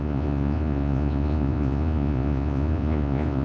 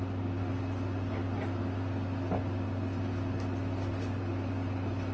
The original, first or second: second